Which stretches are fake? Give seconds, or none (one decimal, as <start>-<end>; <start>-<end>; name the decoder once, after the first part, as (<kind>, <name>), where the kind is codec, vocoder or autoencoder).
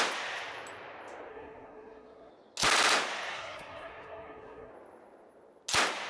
1.3-2.3 (codec, SNAC); 3.3-4.7